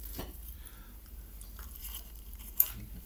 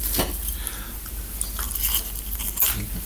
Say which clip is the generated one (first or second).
first